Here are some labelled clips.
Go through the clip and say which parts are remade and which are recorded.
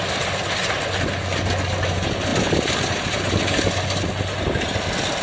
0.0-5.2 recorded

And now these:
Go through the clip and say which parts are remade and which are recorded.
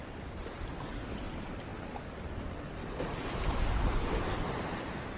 0.0-5.2 recorded